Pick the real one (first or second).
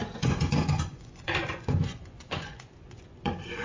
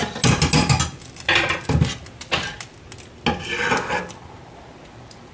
second